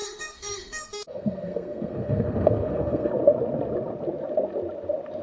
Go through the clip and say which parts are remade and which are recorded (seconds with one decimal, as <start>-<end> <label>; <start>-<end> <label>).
0.0-3.1 remade; 3.1-5.2 recorded